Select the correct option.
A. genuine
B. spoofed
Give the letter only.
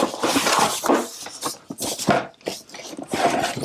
A